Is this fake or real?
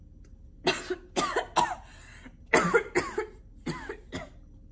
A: real